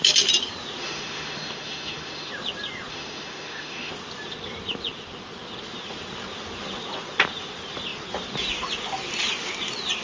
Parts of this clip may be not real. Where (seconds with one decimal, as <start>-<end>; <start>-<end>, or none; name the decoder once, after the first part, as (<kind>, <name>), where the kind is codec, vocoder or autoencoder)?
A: 0.8-2.3 (autoencoder, DAC-VAE); 2.9-3.9